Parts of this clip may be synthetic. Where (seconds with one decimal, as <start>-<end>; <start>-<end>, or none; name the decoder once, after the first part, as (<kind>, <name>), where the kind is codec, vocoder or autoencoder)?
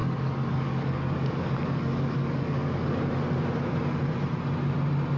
0.0-3.1 (codec, DAC)